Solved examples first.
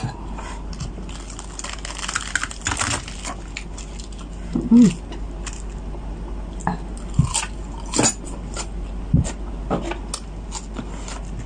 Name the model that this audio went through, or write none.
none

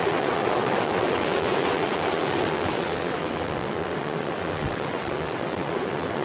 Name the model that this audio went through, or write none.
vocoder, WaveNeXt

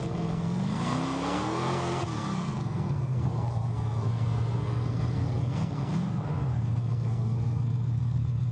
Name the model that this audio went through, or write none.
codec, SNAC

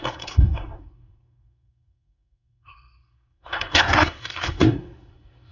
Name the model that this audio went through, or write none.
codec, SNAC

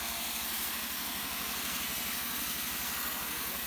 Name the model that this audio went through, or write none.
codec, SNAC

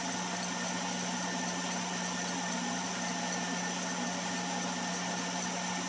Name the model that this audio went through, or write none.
none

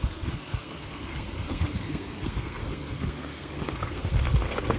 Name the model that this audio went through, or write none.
codec, SNAC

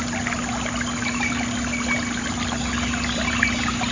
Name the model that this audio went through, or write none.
none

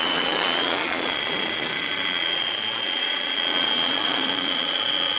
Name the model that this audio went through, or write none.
vocoder, Vocos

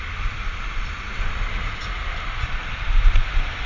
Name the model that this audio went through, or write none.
none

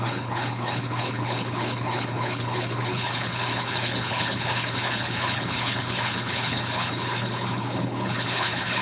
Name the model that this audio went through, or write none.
codec, HILCodec